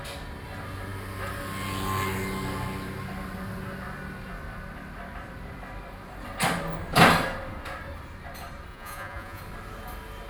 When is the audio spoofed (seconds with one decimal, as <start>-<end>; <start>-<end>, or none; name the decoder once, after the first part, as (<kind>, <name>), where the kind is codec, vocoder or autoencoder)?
8.7-9.4 (vocoder, Vocos)